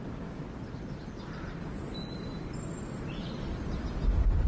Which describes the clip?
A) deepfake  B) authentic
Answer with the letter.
B